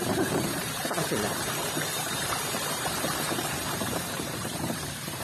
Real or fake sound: fake